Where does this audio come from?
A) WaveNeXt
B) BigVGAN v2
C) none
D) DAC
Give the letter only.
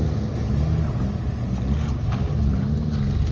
C